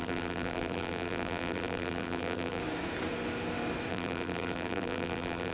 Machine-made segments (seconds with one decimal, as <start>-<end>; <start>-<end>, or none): 0.0-2.6; 3.9-5.5